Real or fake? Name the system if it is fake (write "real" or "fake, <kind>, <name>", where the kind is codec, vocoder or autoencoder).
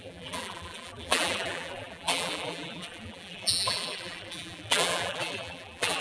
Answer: fake, vocoder, BigVGAN v2